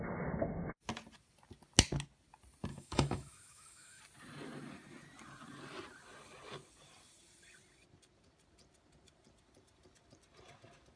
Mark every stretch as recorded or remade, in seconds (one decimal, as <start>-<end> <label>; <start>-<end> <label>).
0.0-2.7 recorded; 2.7-4.0 remade; 4.0-11.0 recorded